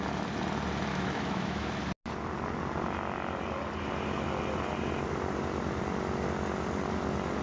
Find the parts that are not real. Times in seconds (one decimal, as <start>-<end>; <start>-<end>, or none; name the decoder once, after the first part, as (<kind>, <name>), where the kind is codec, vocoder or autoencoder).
0.9-1.7 (autoencoder, DAC-VAE)